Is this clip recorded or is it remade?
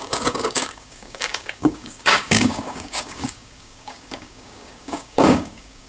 remade